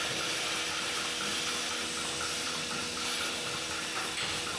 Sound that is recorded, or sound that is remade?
recorded